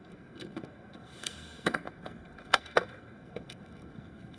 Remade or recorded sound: remade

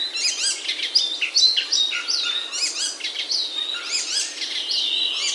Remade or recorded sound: recorded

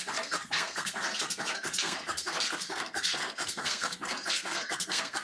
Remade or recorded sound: remade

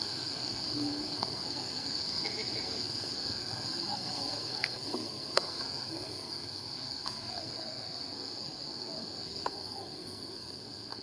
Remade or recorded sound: remade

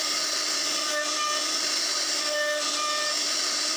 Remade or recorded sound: recorded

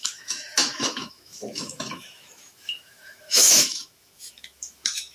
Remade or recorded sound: remade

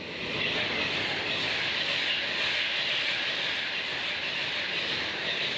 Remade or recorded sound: recorded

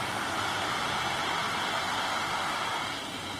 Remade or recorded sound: recorded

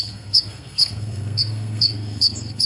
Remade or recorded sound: remade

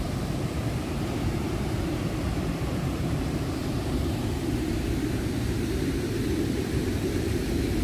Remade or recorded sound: remade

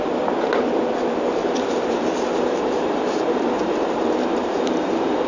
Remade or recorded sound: remade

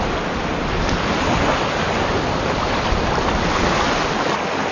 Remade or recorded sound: recorded